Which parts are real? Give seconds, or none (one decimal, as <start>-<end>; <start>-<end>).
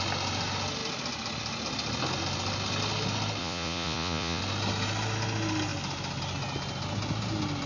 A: 0.0-3.4; 4.4-7.7